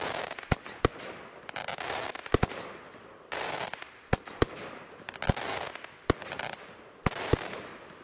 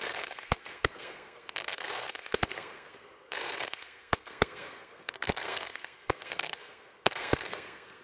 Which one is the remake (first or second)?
second